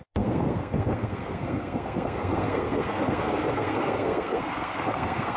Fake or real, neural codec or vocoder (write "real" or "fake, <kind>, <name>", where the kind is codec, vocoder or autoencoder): fake, codec, SNAC